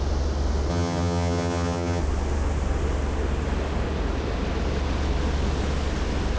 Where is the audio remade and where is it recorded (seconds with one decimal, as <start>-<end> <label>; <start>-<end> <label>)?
0.0-0.7 recorded; 0.7-2.0 remade; 2.0-6.4 recorded